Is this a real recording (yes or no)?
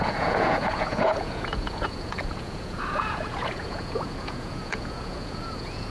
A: no